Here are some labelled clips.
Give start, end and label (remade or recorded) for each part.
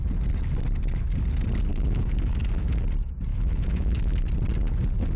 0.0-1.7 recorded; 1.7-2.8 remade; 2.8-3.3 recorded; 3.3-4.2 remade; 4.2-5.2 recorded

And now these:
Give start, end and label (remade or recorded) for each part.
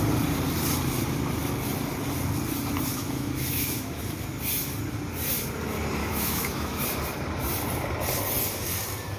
0.0-2.9 recorded; 2.9-4.0 remade; 4.0-6.0 recorded; 6.0-6.8 remade; 6.8-9.2 recorded